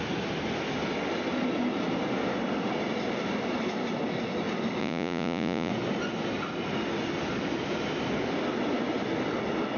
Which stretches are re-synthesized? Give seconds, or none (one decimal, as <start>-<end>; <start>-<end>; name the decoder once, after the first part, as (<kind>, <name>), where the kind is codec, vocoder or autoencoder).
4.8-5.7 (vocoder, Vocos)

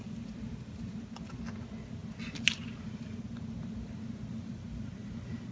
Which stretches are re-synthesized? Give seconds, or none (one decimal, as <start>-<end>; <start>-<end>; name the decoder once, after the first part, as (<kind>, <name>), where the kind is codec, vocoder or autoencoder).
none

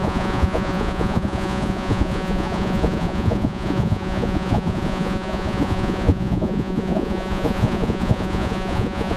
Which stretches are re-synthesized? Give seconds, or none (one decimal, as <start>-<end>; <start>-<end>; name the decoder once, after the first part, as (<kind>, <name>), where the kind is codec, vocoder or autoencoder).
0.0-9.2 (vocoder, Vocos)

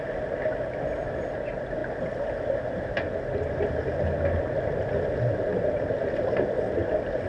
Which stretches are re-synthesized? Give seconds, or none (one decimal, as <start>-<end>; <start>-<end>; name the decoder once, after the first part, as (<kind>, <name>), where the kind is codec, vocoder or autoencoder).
none

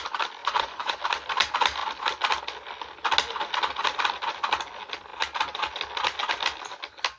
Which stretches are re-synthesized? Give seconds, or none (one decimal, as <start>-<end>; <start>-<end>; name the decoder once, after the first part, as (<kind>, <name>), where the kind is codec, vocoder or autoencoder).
0.4-1.0 (vocoder, Vocos)

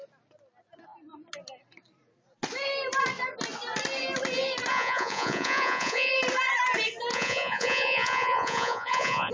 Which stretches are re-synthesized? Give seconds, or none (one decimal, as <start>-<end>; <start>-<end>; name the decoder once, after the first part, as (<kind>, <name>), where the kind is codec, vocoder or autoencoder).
4.7-6.1 (vocoder, Vocos); 7.1-9.3

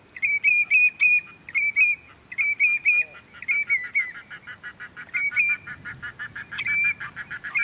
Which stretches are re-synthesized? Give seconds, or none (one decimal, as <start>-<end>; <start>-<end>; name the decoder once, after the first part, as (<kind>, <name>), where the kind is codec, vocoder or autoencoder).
none